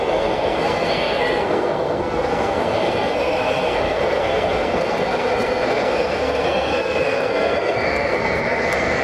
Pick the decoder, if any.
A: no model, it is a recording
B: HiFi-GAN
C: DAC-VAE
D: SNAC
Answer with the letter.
D